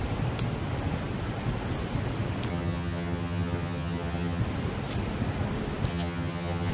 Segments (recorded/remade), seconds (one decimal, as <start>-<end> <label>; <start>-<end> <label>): 0.0-2.5 recorded; 2.5-4.4 remade; 4.4-5.9 recorded; 5.9-6.7 remade